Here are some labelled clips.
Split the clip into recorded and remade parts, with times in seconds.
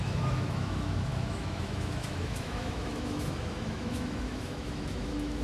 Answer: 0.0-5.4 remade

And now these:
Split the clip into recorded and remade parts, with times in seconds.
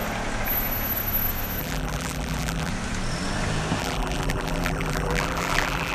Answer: 0.0-1.6 recorded; 1.6-2.7 remade; 2.7-3.8 recorded; 3.8-5.9 remade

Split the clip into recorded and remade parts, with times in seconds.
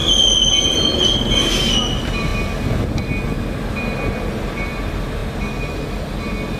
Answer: 0.0-6.6 recorded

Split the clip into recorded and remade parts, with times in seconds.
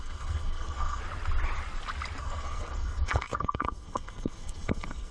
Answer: 0.0-1.0 remade; 1.0-2.2 recorded; 2.2-5.1 remade